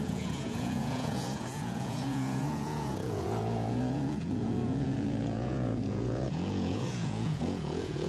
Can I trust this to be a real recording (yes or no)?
no